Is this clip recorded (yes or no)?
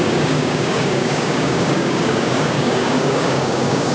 no